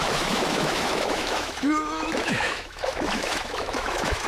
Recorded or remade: remade